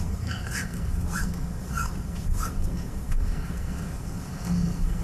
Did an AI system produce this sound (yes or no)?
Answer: yes